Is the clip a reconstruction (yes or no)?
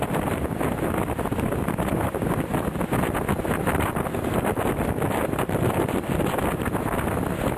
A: no